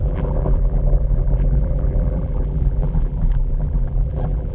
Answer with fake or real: fake